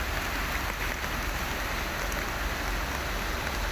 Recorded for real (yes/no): yes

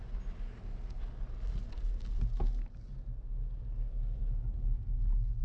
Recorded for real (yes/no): yes